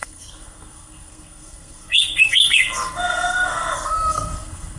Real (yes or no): no